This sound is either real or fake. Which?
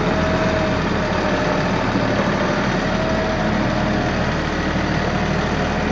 real